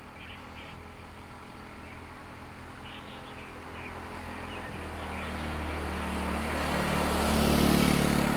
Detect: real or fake real